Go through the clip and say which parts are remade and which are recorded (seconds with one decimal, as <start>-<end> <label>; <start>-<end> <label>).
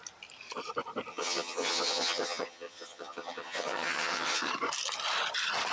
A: 0.0-1.1 recorded; 1.1-4.5 remade; 4.5-5.7 recorded